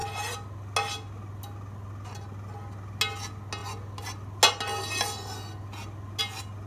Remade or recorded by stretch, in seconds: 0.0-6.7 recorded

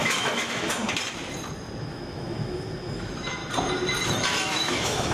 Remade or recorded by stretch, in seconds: 0.0-0.8 remade; 0.8-1.8 recorded; 1.8-3.4 remade; 3.4-4.0 recorded; 4.0-5.1 remade

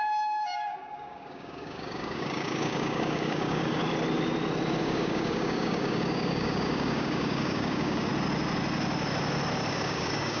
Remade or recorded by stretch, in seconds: 0.0-3.8 remade; 3.8-4.8 recorded; 4.8-8.1 remade; 8.1-9.7 recorded; 9.7-10.4 remade

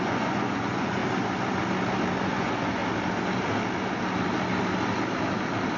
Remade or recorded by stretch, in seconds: 0.0-1.0 remade; 1.0-2.2 recorded; 2.2-2.8 remade; 2.8-5.8 recorded

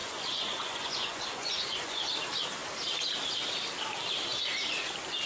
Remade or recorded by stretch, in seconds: 0.0-2.1 remade; 2.1-5.3 recorded

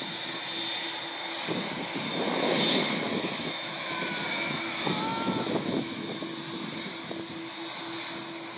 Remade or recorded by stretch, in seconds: 0.0-2.1 recorded; 2.1-6.1 remade; 6.1-8.6 recorded